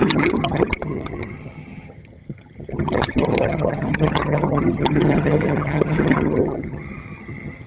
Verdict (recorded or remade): remade